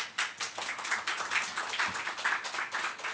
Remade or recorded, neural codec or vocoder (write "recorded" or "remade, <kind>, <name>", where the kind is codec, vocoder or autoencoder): recorded